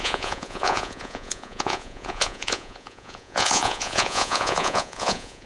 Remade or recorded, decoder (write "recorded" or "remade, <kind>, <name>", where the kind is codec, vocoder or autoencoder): remade, vocoder, Vocos